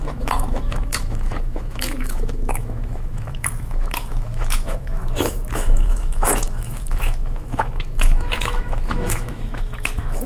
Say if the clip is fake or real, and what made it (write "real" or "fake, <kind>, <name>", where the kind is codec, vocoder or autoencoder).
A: fake, autoencoder, DAC-VAE